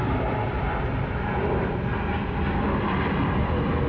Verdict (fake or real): real